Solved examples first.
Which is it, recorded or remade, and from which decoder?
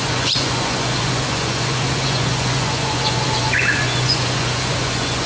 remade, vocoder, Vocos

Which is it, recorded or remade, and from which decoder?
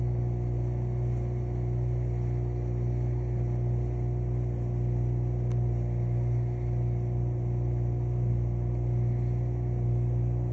recorded